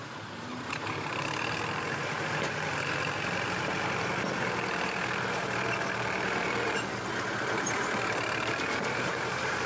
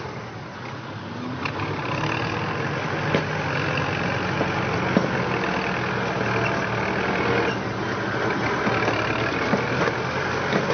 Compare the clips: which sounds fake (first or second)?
first